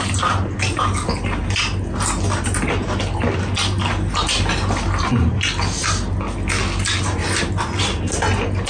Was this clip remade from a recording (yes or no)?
no